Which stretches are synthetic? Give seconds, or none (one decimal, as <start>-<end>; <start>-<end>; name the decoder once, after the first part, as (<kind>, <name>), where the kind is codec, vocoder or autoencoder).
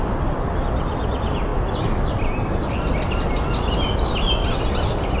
none